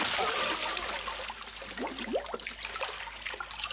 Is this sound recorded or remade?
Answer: recorded